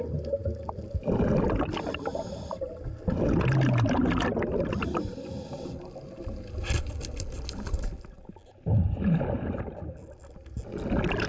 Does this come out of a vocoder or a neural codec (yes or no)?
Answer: no